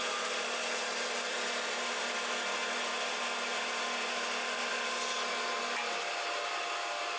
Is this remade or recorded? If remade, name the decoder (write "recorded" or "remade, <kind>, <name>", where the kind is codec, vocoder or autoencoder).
recorded